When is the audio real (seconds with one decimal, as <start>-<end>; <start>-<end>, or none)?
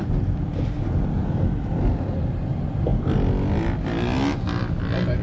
0.0-5.2